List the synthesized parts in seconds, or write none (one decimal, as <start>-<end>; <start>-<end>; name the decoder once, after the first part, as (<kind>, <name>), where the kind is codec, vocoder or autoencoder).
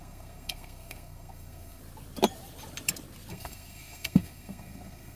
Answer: 0.0-1.8 (codec, SNAC); 3.3-5.2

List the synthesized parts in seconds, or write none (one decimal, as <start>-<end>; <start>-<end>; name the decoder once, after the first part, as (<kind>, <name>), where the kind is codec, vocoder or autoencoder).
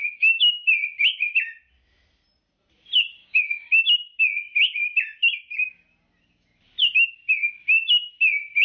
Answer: 0.0-0.7 (codec, DAC); 3.2-3.8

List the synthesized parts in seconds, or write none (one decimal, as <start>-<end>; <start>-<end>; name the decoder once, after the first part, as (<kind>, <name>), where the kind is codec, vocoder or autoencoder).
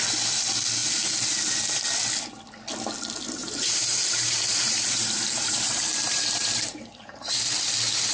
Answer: 3.4-7.3 (vocoder, BigVGAN v2)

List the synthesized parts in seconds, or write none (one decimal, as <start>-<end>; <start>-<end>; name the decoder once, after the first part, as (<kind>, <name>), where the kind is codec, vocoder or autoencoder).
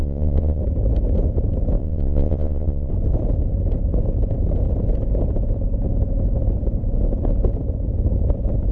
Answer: 0.0-0.6 (vocoder, Vocos); 1.8-2.9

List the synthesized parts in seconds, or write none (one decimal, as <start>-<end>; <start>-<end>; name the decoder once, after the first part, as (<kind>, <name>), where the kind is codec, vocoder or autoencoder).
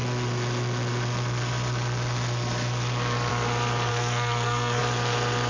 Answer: 3.9-4.8 (codec, SNAC)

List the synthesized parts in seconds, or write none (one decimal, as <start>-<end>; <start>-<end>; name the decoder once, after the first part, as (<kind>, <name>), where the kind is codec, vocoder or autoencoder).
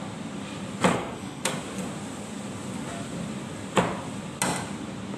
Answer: 0.9-1.5 (codec, SNAC)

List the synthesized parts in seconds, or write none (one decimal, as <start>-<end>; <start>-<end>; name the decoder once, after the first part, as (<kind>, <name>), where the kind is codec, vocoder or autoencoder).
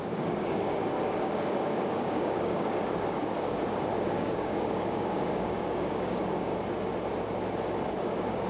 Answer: 0.0-6.5 (codec, DAC); 8.0-8.5